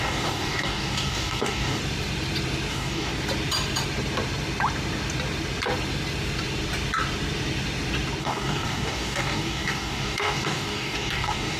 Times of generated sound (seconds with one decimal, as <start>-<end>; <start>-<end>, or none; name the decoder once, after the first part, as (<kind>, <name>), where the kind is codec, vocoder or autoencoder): 0.0-1.8 (codec, DAC); 2.7-3.1; 8.2-11.6